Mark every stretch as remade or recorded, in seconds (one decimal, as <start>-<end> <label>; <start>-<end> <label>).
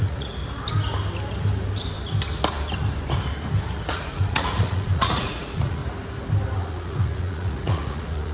0.0-0.4 remade; 0.4-3.8 recorded; 3.8-5.8 remade; 5.8-6.6 recorded; 6.6-8.3 remade